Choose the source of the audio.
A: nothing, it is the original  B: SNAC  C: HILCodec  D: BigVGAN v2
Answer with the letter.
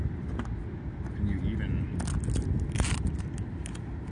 A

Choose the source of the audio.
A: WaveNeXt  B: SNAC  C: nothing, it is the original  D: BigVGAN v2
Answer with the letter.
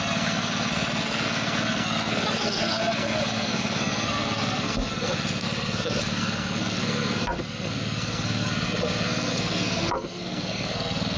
B